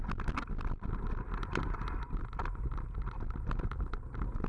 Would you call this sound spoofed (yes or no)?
no